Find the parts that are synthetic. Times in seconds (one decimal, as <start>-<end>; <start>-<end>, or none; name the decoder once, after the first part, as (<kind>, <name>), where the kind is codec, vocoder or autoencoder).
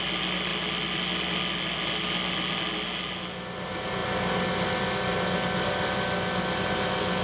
none